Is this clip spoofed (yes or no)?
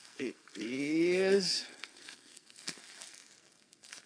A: yes